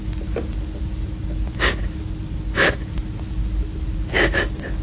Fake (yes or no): yes